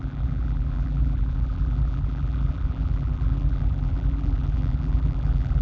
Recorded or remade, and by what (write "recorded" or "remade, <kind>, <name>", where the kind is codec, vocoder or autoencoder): remade, vocoder, BigVGAN v2